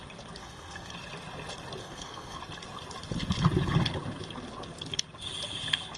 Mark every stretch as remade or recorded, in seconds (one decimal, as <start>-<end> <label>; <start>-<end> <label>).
0.0-0.4 recorded; 0.4-0.9 remade; 0.9-1.8 recorded; 1.8-2.4 remade; 2.4-6.0 recorded